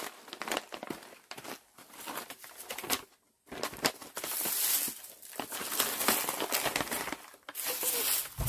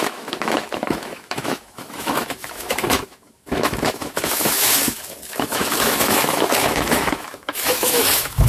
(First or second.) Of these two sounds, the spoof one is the second